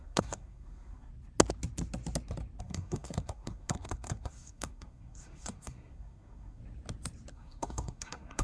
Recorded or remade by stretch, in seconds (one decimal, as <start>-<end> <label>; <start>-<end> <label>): 0.0-1.1 remade; 1.1-2.6 recorded; 2.6-6.6 remade; 6.6-7.3 recorded; 7.3-8.4 remade